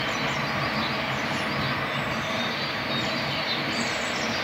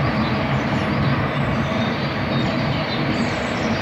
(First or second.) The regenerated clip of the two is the second